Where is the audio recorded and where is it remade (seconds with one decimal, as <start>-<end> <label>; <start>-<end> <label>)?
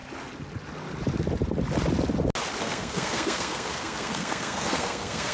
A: 0.0-2.6 recorded; 2.6-5.3 remade